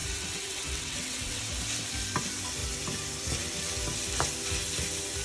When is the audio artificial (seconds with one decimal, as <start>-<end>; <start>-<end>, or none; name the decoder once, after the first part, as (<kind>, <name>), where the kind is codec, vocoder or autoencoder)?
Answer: 0.0-1.4 (vocoder, WaveNeXt)